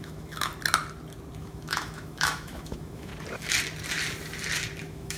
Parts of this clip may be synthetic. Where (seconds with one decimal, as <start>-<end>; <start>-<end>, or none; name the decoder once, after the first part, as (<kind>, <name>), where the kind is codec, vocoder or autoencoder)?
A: 0.0-0.5 (autoencoder, DAC-VAE); 1.4-3.1; 4.8-5.2